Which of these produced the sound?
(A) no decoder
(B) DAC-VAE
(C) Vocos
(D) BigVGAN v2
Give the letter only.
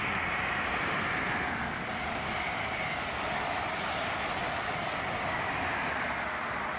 A